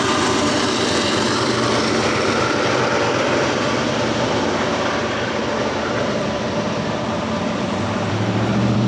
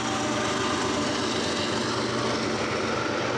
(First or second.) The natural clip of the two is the second